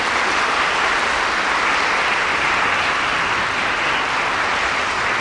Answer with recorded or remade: recorded